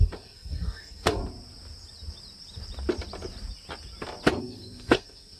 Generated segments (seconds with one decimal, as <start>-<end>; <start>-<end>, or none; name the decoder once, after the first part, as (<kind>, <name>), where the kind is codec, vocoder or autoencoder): 0.0-1.2 (codec, SNAC); 4.4-5.4